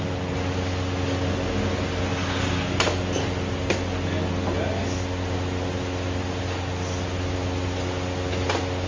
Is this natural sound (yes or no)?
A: yes